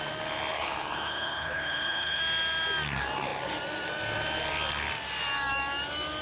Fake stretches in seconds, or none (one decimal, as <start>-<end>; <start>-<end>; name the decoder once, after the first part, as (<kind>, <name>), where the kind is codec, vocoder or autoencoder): 0.5-2.2 (codec, HILCodec)